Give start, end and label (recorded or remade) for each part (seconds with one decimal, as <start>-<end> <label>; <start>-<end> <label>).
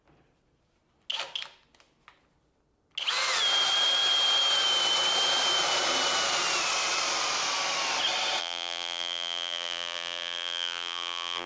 0.0-8.4 recorded; 8.4-11.5 remade